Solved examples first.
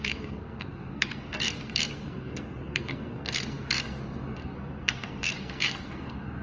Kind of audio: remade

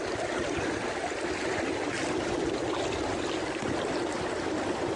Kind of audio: recorded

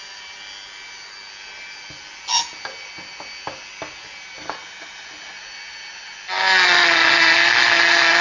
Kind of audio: recorded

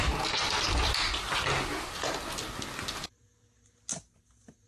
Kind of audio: recorded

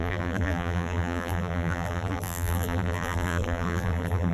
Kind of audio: remade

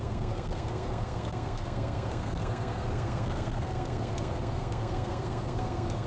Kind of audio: remade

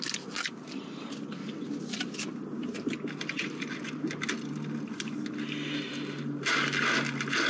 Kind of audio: recorded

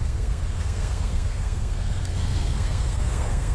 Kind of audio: remade